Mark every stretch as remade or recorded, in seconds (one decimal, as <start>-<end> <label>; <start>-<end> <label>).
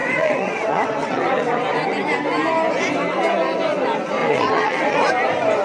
0.0-1.6 remade; 1.6-4.2 recorded; 4.2-5.1 remade; 5.1-5.6 recorded